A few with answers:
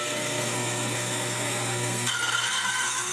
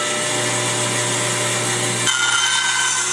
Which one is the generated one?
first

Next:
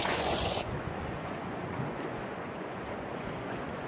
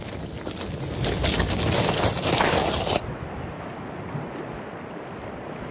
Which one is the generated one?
first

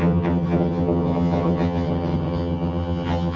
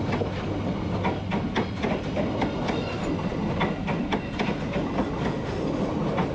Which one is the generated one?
first